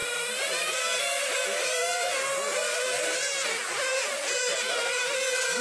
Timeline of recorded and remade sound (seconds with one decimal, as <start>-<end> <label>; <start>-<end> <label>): 0.0-2.4 remade; 2.4-3.9 recorded; 3.9-4.9 remade; 4.9-5.6 recorded

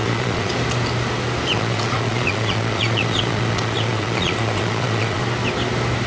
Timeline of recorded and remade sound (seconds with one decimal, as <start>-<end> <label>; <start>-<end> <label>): 0.0-0.5 remade; 0.5-1.5 recorded; 1.5-5.2 remade; 5.2-6.1 recorded

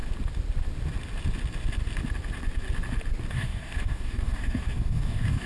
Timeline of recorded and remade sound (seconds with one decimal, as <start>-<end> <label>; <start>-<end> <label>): 0.0-3.3 recorded; 3.3-5.5 remade

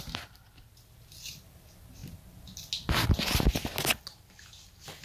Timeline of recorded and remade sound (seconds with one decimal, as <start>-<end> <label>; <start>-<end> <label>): 0.0-5.0 recorded

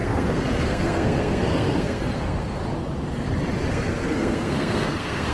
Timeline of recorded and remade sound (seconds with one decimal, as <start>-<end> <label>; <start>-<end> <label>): 0.0-2.6 remade; 2.6-3.7 recorded; 3.7-5.3 remade

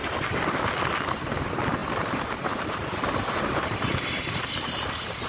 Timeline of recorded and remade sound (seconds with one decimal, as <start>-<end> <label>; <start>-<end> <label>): 0.0-1.8 recorded; 1.8-5.3 remade

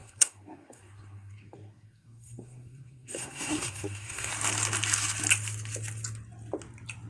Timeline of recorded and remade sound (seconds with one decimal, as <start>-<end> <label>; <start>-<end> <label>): 0.0-4.3 remade; 4.3-7.1 recorded